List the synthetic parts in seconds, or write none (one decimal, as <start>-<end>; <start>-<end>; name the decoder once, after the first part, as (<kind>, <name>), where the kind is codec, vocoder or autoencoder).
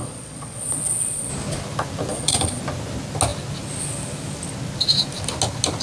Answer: 0.0-1.3 (vocoder, Vocos); 2.1-2.6